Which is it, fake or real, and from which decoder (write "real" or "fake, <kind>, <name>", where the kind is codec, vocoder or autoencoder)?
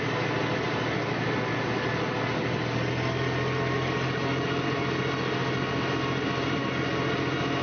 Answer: real